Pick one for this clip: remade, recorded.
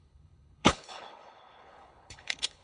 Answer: remade